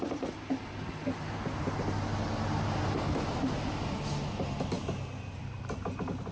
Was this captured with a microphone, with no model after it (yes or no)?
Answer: yes